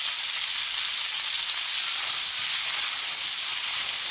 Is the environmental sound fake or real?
real